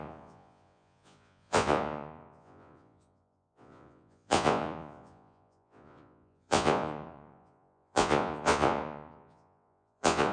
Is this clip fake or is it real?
fake